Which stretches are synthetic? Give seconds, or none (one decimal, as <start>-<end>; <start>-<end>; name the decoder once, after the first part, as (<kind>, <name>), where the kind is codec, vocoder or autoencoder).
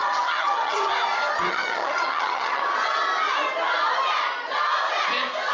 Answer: 0.0-0.9 (vocoder, HiFi-GAN); 1.5-2.6